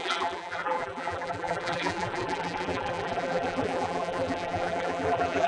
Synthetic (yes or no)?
yes